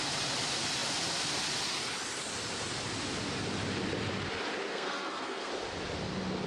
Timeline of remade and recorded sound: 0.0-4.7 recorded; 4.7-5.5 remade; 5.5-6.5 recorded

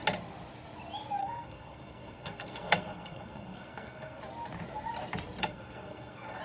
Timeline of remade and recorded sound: 0.0-1.2 recorded; 1.2-4.2 remade; 4.2-5.4 recorded; 5.4-6.4 remade

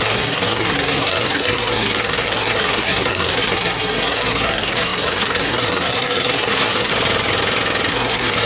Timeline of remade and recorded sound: 0.0-6.9 remade; 6.9-7.9 recorded; 7.9-8.5 remade

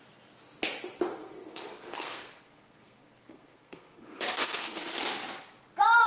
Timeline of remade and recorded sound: 0.0-1.2 recorded; 1.2-4.9 remade; 4.9-6.1 recorded

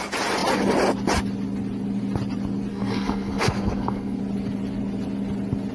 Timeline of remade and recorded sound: 0.0-2.7 recorded; 2.7-4.2 remade; 4.2-5.7 recorded

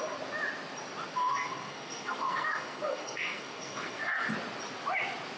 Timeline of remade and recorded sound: 0.0-1.1 recorded; 1.1-4.3 remade; 4.3-5.4 recorded